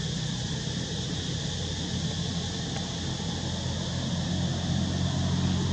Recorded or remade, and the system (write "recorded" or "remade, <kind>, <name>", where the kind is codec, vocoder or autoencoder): recorded